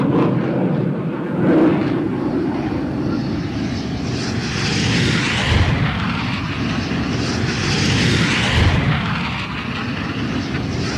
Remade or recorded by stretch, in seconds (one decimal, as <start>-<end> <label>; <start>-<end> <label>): 0.0-1.7 recorded; 1.7-3.7 remade; 3.7-11.0 recorded